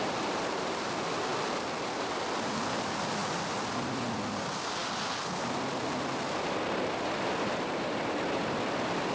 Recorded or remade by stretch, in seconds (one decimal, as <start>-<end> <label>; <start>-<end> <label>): 0.0-9.1 recorded